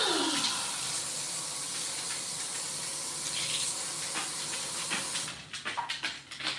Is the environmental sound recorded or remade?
recorded